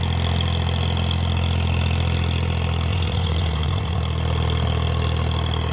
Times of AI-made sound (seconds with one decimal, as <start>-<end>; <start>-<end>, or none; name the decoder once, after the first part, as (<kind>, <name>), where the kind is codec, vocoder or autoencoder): 2.9-4.0 (vocoder, Vocos)